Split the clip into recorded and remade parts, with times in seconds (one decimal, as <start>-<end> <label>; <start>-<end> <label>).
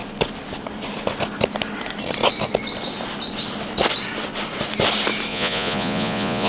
0.0-5.3 recorded; 5.3-6.5 remade